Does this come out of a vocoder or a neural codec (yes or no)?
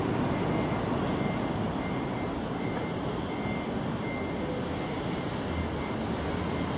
no